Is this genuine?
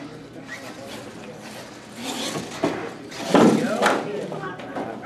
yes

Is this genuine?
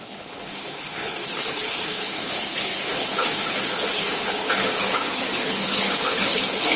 no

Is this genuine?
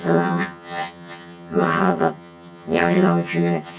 no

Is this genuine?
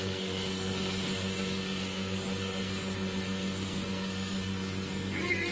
no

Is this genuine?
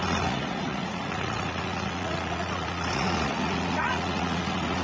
no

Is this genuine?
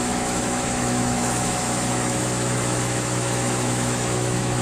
no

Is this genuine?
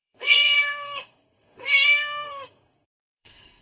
no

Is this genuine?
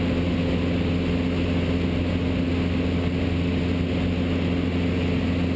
yes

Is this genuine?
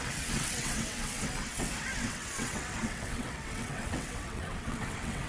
no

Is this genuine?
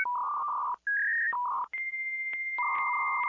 yes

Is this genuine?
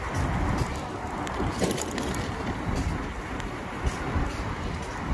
yes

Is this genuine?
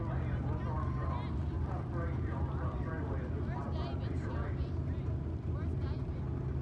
yes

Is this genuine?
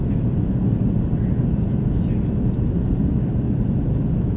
yes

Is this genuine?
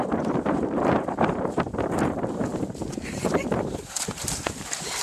no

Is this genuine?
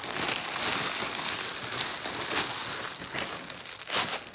yes